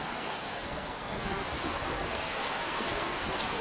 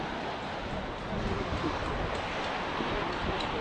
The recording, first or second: second